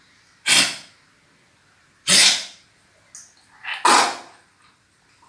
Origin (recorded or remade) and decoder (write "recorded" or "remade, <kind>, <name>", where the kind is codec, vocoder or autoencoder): recorded